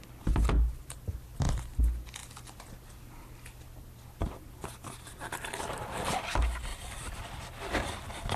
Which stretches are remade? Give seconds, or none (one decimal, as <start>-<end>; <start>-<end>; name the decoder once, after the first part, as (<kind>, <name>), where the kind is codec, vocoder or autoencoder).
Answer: 5.5-6.2 (vocoder, BigVGAN v2); 6.7-7.2